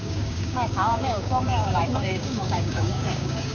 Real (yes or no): no